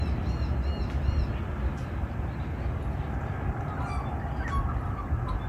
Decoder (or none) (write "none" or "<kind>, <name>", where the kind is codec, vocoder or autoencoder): none